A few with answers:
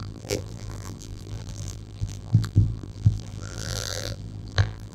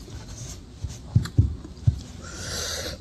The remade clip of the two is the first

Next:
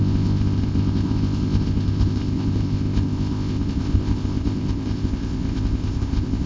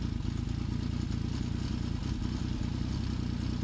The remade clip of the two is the first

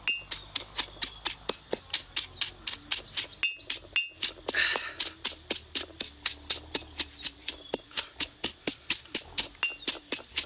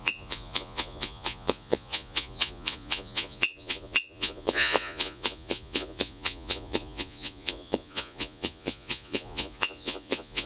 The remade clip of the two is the second